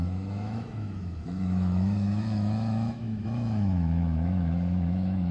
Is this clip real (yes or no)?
no